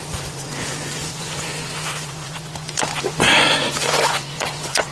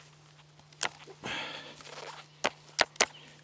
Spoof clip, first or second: first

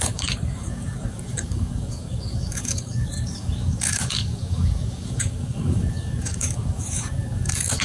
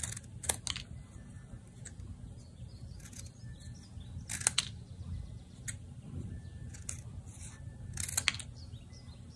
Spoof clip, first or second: first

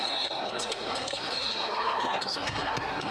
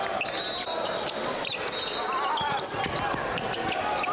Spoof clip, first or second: first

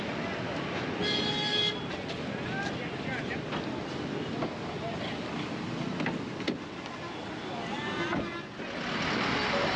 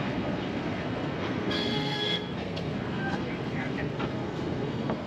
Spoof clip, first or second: second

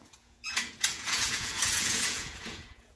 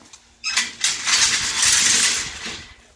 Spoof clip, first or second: first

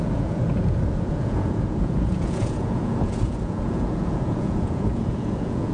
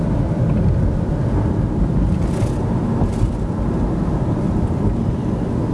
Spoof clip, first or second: first